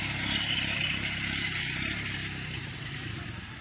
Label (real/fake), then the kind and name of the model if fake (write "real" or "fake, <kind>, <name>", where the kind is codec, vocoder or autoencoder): fake, vocoder, BigVGAN v2